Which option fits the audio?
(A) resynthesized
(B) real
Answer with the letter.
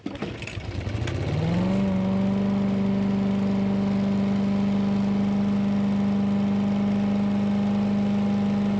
B